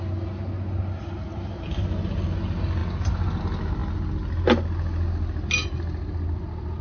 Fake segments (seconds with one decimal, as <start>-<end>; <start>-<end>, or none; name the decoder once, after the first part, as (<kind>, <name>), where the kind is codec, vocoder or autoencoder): none